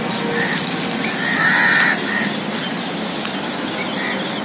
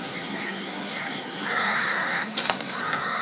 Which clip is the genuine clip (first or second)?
first